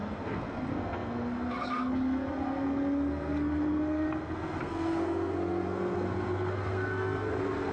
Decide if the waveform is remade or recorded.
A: remade